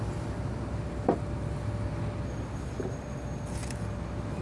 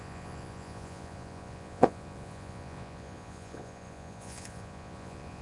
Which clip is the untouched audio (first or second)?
first